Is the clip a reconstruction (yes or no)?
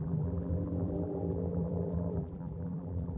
yes